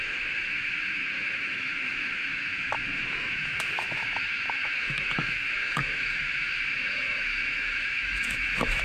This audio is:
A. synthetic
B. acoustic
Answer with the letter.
A